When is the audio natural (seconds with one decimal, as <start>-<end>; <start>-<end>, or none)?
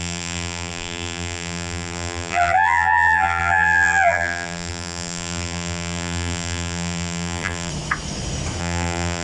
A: 7.7-8.6